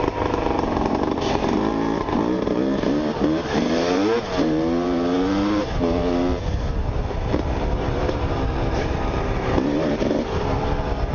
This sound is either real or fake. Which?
fake